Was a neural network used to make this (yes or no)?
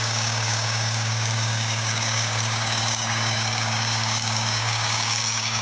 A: yes